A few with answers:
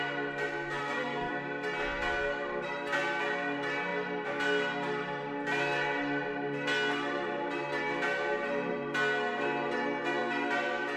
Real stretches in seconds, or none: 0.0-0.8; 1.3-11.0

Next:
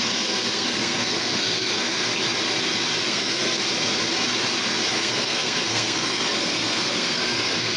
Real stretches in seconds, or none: 2.1-3.1; 3.6-4.9

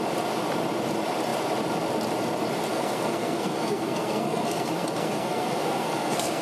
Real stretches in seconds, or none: 0.0-2.7

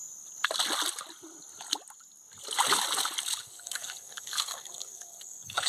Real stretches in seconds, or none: 0.0-3.4

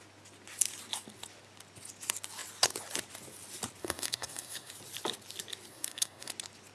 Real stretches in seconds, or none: 0.0-3.8; 4.7-5.7; 6.3-6.7

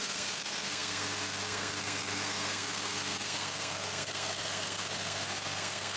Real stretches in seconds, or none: none

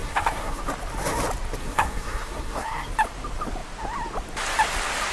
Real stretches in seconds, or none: 0.6-1.6; 2.9-5.1

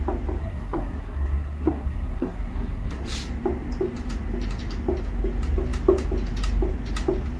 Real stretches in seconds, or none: 0.0-0.4; 3.0-7.4